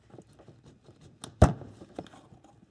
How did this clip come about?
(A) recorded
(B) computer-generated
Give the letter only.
A